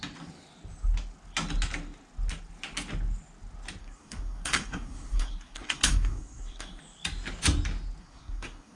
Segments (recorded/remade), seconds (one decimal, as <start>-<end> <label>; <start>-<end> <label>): 0.0-3.8 recorded; 3.8-6.8 remade; 6.8-8.0 recorded; 8.0-8.8 remade

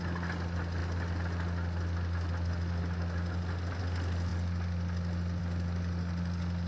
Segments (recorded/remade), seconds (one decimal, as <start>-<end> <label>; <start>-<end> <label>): 0.0-6.7 recorded

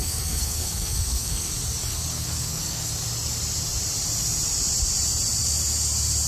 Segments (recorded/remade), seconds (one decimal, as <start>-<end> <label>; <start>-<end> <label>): 0.0-1.5 remade; 1.5-2.1 recorded; 2.1-2.9 remade; 2.9-6.3 recorded

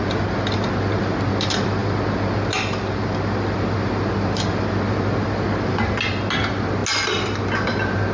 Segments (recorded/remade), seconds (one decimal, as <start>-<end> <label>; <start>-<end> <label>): 0.0-8.1 recorded

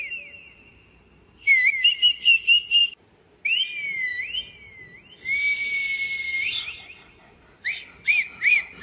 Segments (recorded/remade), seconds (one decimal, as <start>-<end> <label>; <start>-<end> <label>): 0.0-8.8 recorded

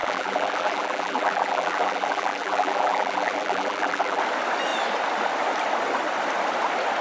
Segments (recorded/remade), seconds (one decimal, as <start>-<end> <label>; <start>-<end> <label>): 0.0-4.2 remade; 4.2-7.0 recorded

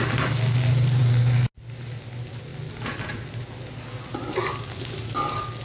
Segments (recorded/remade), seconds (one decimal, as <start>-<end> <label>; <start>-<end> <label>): 0.0-5.6 recorded